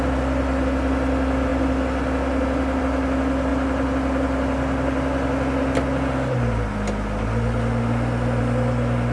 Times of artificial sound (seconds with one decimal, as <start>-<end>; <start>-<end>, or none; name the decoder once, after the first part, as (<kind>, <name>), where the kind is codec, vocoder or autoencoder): none